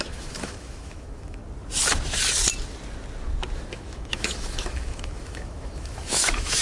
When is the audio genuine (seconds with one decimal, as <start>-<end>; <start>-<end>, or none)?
1.4-3.7